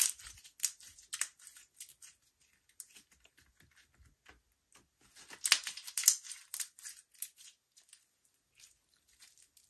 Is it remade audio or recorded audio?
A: recorded